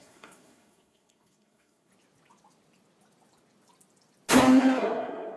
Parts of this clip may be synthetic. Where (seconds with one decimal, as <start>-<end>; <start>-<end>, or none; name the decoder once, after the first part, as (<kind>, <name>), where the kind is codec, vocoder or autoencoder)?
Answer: 0.0-1.9 (codec, SNAC); 4.3-5.4